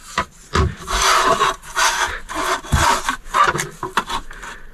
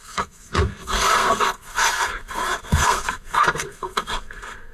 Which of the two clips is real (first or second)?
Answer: first